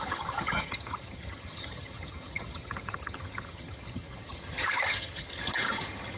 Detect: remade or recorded remade